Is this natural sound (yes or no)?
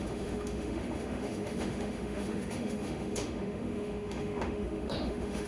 no